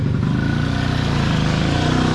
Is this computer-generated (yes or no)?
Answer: no